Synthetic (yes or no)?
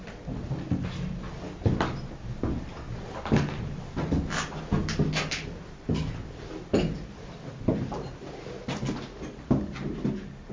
no